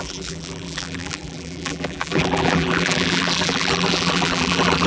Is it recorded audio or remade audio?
remade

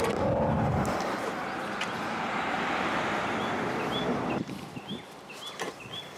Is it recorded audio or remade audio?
recorded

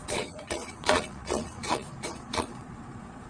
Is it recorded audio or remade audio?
remade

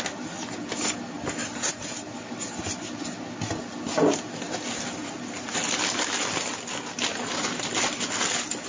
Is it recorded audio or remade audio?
recorded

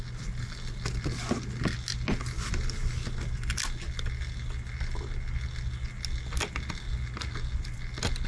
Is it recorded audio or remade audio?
recorded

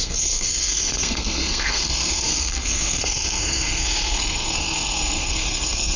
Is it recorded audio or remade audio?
remade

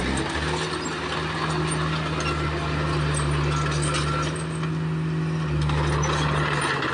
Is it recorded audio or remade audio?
recorded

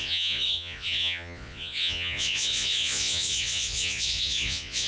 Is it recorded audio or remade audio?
remade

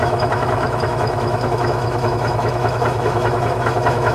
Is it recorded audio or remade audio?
remade